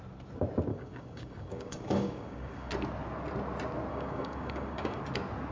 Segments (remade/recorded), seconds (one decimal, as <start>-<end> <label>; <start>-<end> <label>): 0.0-0.7 recorded; 0.7-2.7 remade; 2.7-3.9 recorded; 3.9-5.0 remade; 5.0-5.5 recorded